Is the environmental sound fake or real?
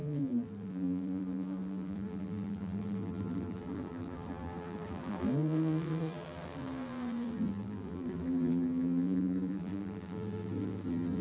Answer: fake